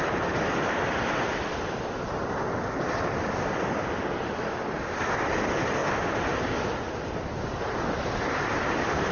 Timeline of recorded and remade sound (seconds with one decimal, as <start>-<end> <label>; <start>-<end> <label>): 0.0-9.1 recorded